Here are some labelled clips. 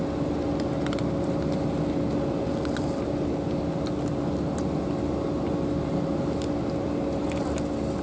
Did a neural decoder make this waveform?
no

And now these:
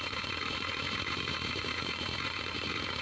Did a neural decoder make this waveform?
yes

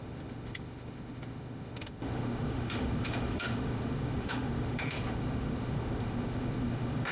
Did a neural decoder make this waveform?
yes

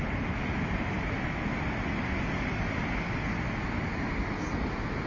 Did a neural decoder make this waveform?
no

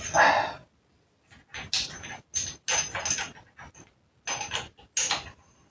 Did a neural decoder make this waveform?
no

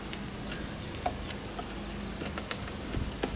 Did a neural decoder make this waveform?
no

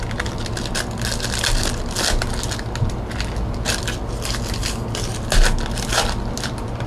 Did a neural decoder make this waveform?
no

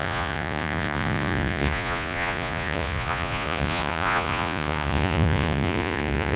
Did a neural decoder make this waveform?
yes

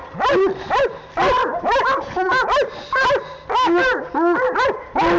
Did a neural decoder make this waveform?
no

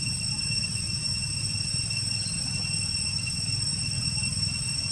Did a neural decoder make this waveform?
no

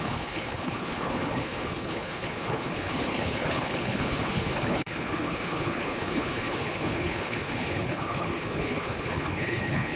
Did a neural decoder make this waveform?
yes